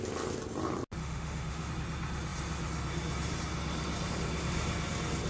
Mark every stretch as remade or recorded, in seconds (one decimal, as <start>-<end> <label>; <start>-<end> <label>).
0.0-1.0 recorded; 1.0-1.7 remade; 1.7-5.3 recorded